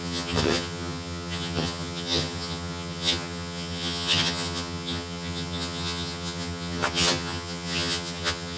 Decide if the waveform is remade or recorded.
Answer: remade